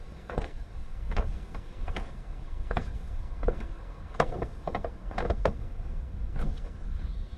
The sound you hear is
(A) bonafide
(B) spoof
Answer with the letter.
B